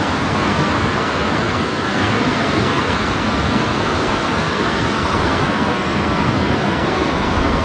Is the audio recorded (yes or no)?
no